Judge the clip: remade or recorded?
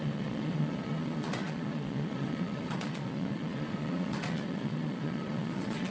remade